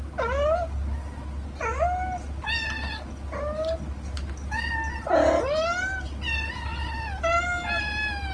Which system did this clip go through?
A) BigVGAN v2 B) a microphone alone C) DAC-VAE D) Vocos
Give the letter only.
B